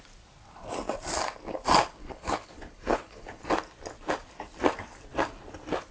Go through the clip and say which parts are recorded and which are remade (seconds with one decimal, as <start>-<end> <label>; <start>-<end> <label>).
0.0-2.0 recorded; 2.0-3.4 remade; 3.4-5.9 recorded